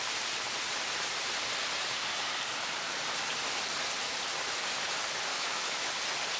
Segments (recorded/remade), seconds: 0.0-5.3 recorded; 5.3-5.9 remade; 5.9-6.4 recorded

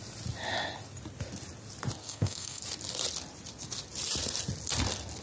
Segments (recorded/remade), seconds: 0.0-2.0 recorded; 2.0-2.6 remade; 2.6-5.2 recorded

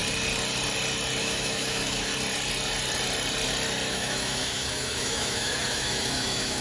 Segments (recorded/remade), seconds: 0.0-1.2 recorded; 1.2-2.1 remade; 2.1-3.9 recorded; 3.9-6.6 remade

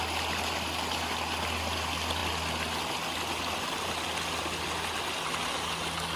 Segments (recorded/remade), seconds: 0.0-6.2 recorded

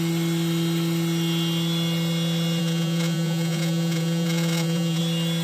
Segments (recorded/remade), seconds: 0.0-2.6 recorded; 2.6-5.0 remade; 5.0-5.4 recorded

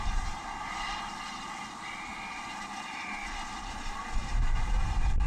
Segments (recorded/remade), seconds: 0.0-2.1 remade; 2.1-4.2 recorded; 4.2-5.3 remade

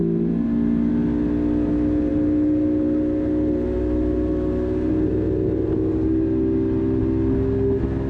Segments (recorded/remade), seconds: 0.0-8.1 recorded